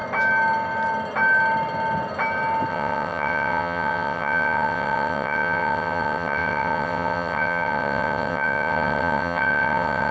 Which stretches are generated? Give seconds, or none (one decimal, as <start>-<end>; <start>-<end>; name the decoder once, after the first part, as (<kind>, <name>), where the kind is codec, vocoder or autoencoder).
2.7-10.1 (vocoder, WaveNeXt)